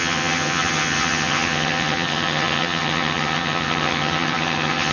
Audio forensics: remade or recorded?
remade